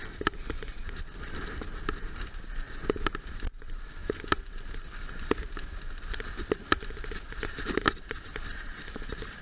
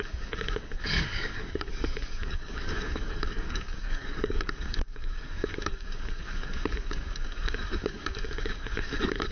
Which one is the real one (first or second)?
first